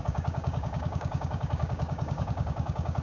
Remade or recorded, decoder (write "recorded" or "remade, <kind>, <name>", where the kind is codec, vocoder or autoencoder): remade, codec, DAC